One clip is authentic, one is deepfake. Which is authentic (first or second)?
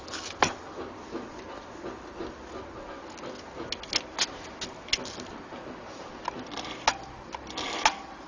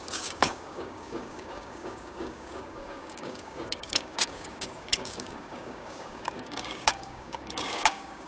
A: first